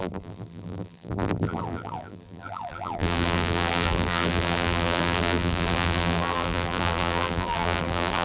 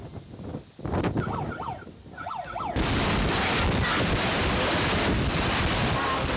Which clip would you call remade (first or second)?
first